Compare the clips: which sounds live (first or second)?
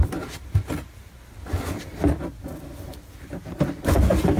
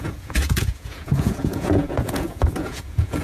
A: first